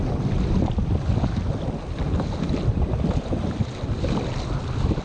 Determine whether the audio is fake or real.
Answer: real